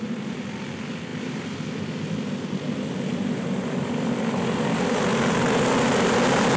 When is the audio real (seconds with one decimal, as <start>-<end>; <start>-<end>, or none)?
0.0-6.6